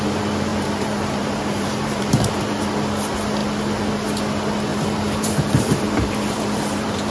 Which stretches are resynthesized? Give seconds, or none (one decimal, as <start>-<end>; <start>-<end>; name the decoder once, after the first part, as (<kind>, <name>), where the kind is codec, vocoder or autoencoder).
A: 0.5-2.4 (vocoder, BigVGAN v2); 4.7-7.1